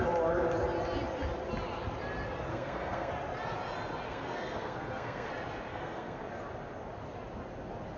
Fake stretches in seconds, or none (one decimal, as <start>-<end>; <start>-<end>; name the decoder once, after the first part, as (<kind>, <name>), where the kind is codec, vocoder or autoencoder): 2.5-3.1 (codec, SNAC); 4.1-5.3; 5.7-6.2